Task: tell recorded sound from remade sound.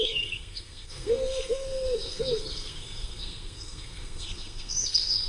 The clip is remade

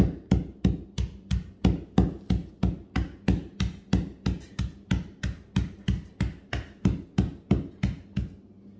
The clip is recorded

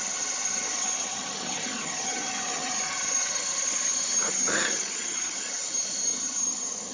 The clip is remade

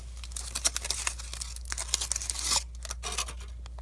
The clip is recorded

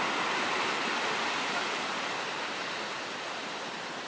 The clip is remade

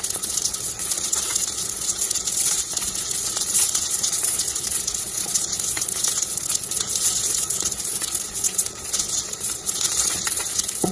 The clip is remade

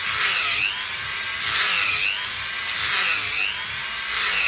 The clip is recorded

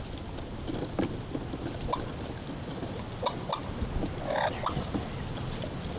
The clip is recorded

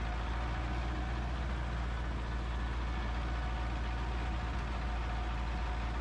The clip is recorded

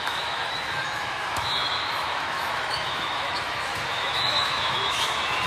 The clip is remade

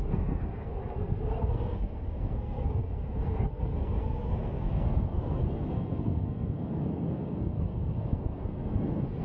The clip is remade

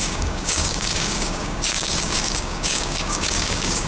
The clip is remade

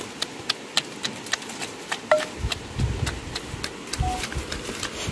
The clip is recorded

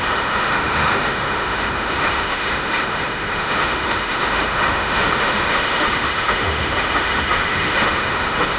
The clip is remade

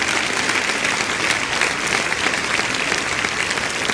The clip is recorded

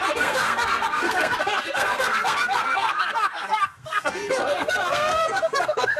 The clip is remade